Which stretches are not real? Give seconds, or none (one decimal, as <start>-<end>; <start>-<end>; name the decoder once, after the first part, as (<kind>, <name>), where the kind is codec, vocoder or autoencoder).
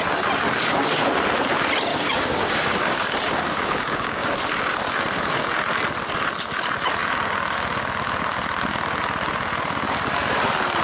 1.9-4.4 (codec, DAC)